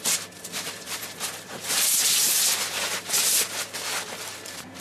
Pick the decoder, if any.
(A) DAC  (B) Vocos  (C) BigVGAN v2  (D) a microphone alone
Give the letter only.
C